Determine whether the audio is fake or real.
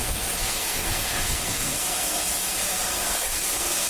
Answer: fake